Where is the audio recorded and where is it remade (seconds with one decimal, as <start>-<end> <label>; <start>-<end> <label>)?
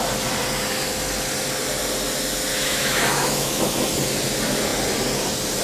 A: 0.0-2.5 recorded; 2.5-3.6 remade; 3.6-5.6 recorded